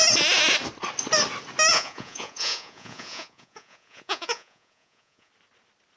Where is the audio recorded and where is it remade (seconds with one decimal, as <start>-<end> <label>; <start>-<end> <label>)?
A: 0.0-1.7 recorded; 1.7-5.3 remade; 5.3-6.0 recorded